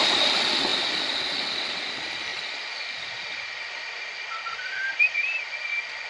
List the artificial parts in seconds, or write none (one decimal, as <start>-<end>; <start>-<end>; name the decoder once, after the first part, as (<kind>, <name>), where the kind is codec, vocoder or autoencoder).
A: 0.7-1.9 (vocoder, BigVGAN v2); 2.3-5.4